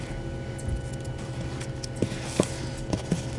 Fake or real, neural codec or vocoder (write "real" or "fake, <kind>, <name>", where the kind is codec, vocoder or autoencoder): real